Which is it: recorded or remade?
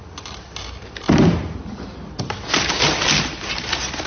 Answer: recorded